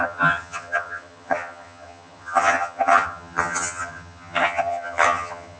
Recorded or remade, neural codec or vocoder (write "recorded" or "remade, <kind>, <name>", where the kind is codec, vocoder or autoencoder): remade, vocoder, HiFi-GAN